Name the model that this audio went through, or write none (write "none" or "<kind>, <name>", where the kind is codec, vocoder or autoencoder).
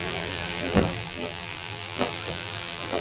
vocoder, BigVGAN v2